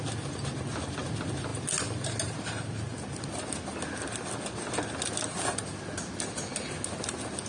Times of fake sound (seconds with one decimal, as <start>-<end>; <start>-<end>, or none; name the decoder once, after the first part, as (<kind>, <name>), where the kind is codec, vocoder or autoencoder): none